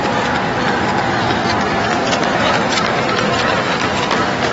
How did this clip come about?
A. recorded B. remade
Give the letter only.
A